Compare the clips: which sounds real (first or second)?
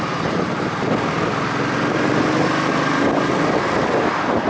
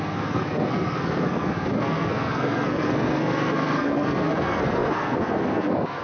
first